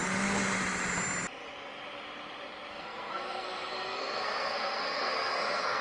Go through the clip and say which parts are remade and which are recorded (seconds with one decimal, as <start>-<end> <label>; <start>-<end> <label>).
0.0-2.7 recorded; 2.7-5.8 remade